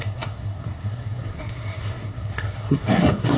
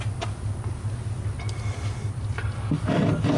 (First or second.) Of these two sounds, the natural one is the second